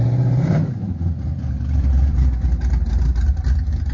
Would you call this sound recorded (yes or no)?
no